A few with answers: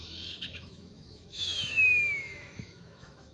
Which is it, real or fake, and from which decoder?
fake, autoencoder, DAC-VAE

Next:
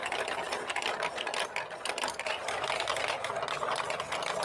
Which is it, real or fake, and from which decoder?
real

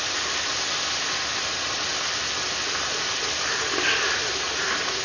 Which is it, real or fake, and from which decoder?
real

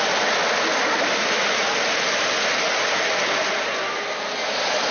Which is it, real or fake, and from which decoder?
real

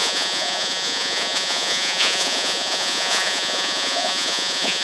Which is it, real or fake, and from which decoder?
fake, vocoder, Vocos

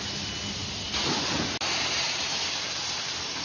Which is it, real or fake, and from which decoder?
real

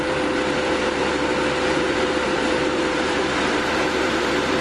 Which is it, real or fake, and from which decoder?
fake, vocoder, BigVGAN v2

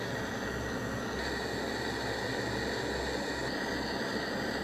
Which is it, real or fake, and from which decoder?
real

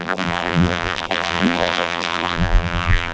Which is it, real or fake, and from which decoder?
fake, vocoder, BigVGAN v2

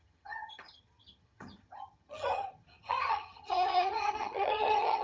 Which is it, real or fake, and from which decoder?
fake, vocoder, HiFi-GAN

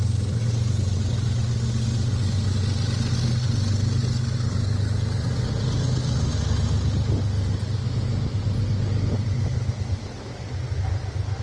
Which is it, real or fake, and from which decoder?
real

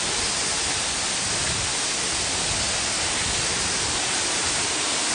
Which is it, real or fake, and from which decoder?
real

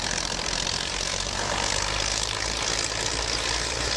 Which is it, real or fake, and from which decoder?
fake, vocoder, BigVGAN v2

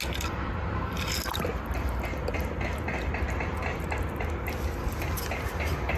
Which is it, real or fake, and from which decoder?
real